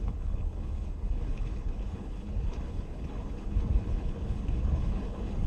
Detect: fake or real fake